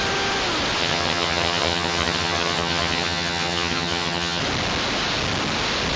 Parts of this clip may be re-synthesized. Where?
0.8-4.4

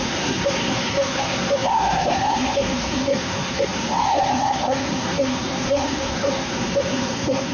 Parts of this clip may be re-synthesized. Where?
0.0-7.5

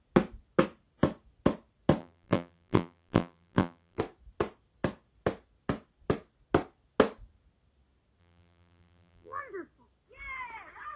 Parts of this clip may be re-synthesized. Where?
2.0-4.0; 8.2-9.4

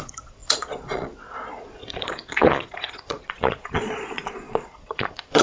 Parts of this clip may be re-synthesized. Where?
0.0-5.4

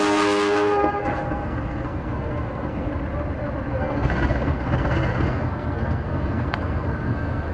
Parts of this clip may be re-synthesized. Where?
0.0-2.9; 3.7-7.5

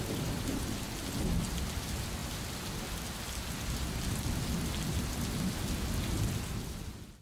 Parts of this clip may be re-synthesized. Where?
none

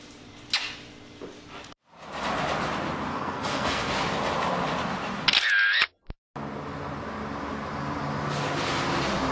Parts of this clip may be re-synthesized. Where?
3.1-3.9